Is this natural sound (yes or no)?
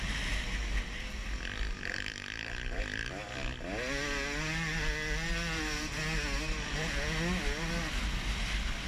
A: yes